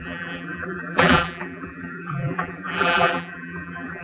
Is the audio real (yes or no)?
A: no